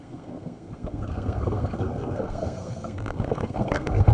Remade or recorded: remade